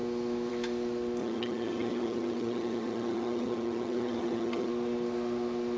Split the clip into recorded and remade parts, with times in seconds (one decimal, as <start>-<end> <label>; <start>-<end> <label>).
0.0-1.2 recorded; 1.2-4.7 remade; 4.7-5.8 recorded